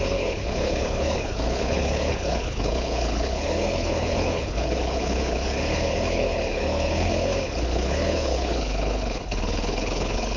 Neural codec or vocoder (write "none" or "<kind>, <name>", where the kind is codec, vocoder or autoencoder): codec, HILCodec